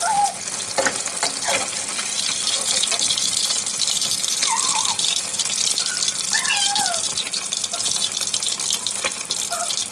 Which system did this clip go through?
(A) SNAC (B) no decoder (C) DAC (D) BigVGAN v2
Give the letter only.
B